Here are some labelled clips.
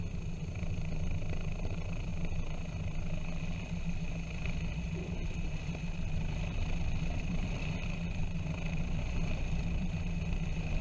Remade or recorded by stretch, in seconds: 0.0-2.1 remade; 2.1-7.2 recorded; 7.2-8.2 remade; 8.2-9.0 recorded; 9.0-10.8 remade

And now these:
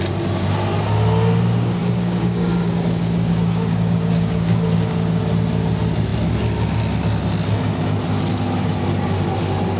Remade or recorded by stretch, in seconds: 0.0-1.8 recorded; 1.8-5.2 remade; 5.2-9.8 recorded

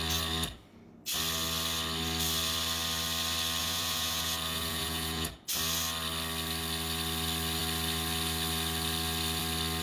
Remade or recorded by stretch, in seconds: 0.0-3.6 recorded; 3.6-5.5 remade; 5.5-9.8 recorded

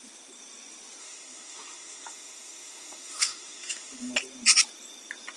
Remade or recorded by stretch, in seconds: 0.0-1.0 recorded; 1.0-4.1 remade; 4.1-5.4 recorded

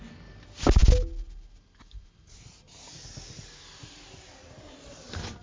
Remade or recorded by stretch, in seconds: 0.0-5.4 recorded